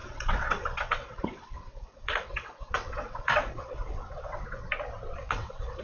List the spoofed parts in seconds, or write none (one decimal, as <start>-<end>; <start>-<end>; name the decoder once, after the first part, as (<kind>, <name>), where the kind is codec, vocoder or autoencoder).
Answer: 0.0-4.6 (vocoder, WaveNeXt); 5.2-5.8